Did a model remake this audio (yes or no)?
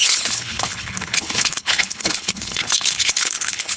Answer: yes